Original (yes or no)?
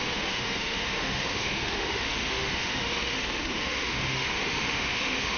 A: no